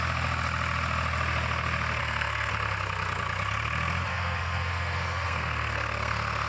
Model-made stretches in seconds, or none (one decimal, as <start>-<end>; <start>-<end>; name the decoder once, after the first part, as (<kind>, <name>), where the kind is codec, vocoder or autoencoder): 2.0-2.5 (codec, SNAC); 4.1-6.5